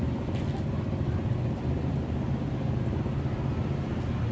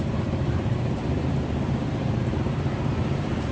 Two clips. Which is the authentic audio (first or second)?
first